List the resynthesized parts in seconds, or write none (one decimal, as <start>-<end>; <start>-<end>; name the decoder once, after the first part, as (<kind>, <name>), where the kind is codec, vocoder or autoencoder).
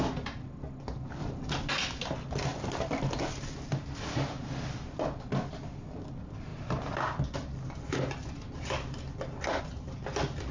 none